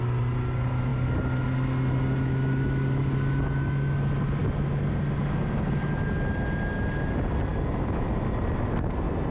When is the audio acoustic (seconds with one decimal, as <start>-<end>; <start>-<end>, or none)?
0.0-9.3